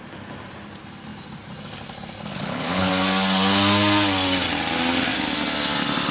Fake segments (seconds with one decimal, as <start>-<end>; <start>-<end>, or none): 2.3-2.9